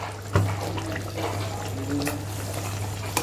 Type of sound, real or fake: real